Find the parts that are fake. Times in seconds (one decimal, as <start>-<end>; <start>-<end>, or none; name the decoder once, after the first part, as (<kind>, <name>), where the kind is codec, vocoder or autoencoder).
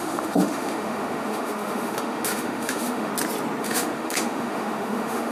0.0-3.1 (autoencoder, DAC-VAE); 3.6-5.3